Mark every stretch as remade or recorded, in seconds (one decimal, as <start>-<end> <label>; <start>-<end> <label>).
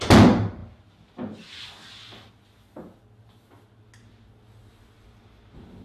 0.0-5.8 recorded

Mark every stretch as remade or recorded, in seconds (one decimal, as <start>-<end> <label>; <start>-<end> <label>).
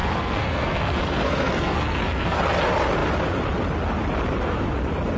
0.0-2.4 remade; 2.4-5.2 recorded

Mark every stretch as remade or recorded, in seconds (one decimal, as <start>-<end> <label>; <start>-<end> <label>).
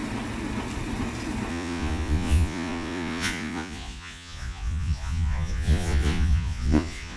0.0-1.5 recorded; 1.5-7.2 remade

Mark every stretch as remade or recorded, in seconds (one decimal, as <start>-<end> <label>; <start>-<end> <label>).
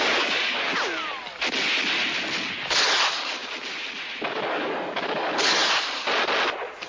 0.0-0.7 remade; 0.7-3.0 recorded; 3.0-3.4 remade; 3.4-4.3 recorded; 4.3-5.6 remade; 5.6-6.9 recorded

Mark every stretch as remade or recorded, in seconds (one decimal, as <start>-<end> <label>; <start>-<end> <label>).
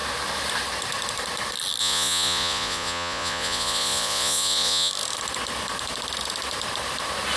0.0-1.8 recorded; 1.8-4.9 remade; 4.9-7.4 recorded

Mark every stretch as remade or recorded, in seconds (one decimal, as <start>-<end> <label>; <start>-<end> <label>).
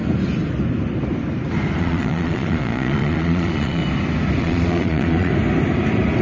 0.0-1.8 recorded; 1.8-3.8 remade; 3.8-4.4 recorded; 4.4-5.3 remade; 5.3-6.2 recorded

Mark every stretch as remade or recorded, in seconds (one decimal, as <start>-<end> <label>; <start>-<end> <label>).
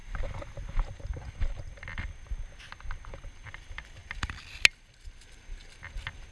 0.0-6.3 recorded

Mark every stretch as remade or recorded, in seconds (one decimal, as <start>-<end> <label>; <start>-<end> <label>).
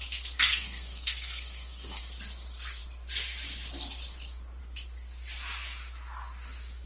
0.0-0.5 recorded; 0.5-2.0 remade; 2.0-6.9 recorded